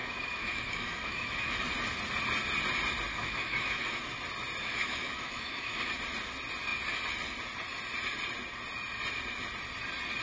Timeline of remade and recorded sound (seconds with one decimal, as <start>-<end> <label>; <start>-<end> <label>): 0.0-1.6 remade; 1.6-3.1 recorded; 3.1-4.0 remade; 4.0-4.6 recorded; 4.6-5.9 remade; 5.9-10.2 recorded